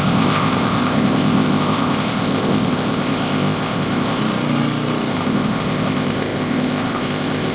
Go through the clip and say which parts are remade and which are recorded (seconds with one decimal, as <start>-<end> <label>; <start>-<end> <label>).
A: 0.0-4.2 remade; 4.2-5.1 recorded; 5.1-7.5 remade